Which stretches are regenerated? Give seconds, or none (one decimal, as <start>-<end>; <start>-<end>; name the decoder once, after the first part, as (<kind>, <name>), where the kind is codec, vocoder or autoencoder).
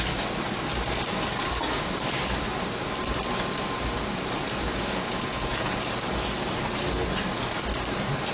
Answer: 4.4-5.7 (vocoder, Vocos)